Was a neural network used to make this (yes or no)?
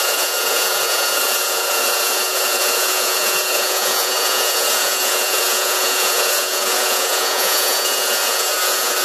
yes